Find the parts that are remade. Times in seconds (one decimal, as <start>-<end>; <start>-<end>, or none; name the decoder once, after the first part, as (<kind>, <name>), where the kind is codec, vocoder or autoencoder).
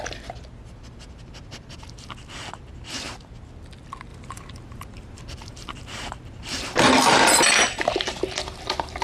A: 4.1-6.8 (vocoder, BigVGAN v2)